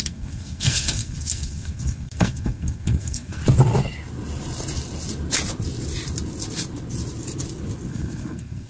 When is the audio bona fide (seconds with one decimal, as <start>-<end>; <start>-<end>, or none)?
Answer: 3.4-7.9